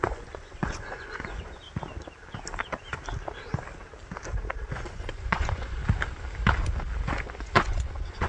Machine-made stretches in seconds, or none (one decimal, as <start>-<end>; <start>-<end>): 0.0-1.6; 4.7-5.8; 7.2-8.3